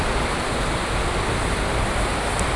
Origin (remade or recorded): recorded